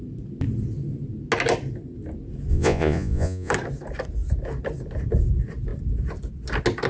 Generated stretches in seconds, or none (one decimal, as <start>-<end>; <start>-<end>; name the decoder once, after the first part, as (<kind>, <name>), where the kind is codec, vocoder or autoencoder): 2.5-3.5 (vocoder, Vocos)